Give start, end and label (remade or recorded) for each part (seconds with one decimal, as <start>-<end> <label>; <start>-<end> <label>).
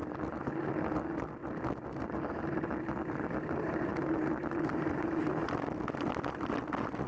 0.0-7.1 recorded